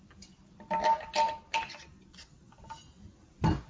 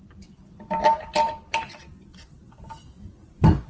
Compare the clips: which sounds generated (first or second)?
second